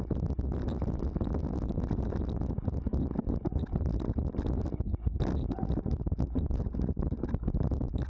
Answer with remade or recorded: recorded